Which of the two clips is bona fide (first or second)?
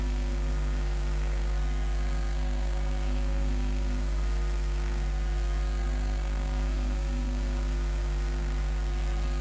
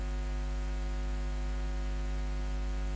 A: second